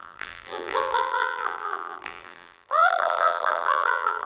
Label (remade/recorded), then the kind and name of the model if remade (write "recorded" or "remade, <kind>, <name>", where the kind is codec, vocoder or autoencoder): remade, vocoder, BigVGAN v2